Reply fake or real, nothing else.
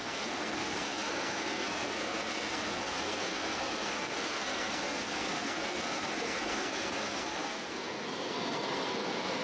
fake